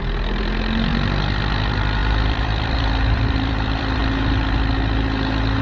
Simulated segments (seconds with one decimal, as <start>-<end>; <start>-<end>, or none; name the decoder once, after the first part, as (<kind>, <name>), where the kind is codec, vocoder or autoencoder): 0.0-0.9 (vocoder, BigVGAN v2); 1.6-4.0